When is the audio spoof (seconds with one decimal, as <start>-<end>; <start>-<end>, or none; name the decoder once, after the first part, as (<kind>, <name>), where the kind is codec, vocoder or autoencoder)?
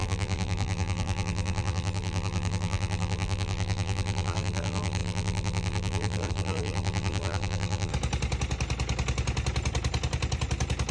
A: 0.0-7.9 (vocoder, BigVGAN v2)